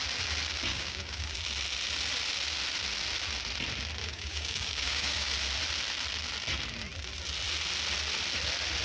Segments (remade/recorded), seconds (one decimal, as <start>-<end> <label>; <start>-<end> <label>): 0.0-0.7 recorded; 0.7-1.3 remade; 1.3-4.0 recorded; 4.0-5.3 remade; 5.3-8.8 recorded